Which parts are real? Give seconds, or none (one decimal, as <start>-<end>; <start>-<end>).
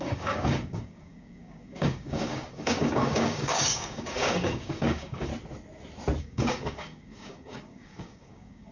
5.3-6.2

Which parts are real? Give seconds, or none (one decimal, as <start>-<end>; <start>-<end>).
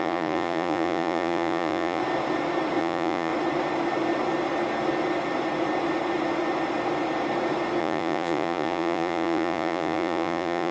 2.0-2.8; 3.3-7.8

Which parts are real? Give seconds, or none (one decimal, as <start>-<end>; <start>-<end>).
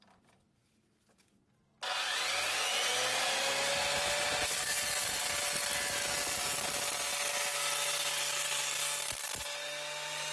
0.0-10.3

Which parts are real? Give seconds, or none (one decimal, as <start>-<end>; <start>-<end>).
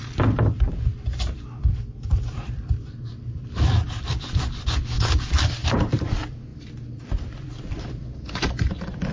none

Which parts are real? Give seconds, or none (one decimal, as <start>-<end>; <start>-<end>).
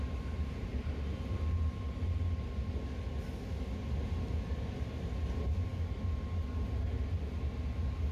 0.0-8.1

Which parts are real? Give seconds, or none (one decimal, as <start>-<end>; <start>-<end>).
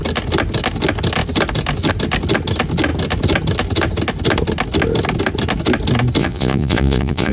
0.0-6.2